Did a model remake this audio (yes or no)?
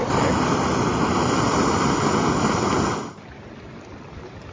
no